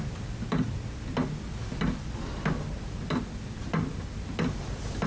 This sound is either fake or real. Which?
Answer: real